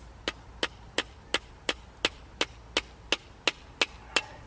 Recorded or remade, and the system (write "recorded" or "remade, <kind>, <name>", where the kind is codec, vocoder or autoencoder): recorded